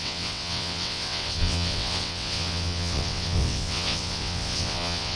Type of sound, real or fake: fake